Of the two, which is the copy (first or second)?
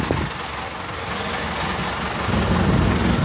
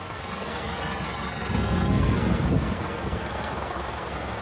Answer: second